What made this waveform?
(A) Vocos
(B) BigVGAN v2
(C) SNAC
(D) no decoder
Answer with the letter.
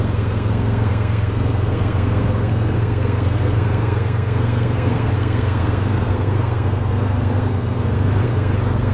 C